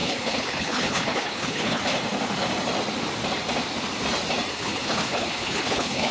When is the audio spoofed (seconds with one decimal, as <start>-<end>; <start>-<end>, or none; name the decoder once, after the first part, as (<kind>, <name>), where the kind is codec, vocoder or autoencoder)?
0.0-1.8 (codec, HILCodec); 4.5-6.1